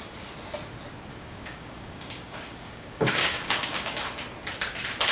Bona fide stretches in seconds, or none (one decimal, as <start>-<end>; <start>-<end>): 0.0-1.1; 4.0-5.1